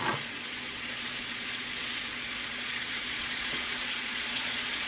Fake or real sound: fake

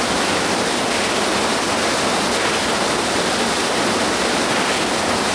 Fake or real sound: real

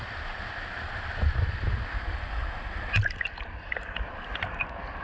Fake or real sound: real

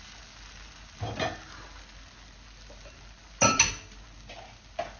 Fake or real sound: real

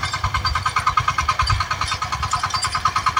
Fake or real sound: real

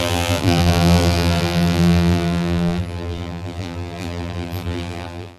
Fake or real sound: fake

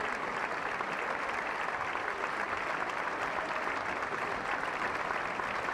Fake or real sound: real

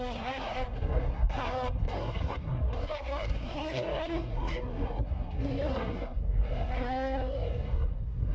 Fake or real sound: fake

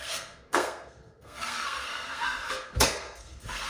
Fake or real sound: fake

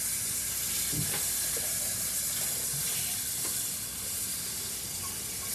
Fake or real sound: real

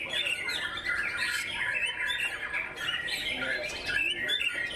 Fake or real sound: real